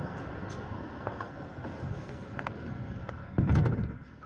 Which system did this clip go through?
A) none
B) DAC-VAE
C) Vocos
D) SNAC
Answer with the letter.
D